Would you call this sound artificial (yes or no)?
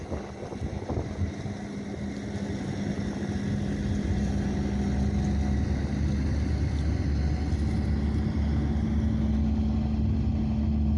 no